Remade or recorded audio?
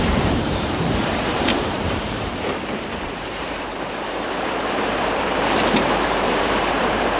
remade